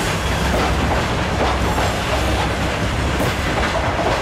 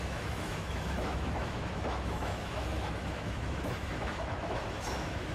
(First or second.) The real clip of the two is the first